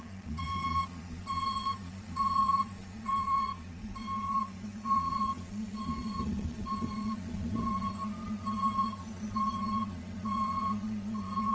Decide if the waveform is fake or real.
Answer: fake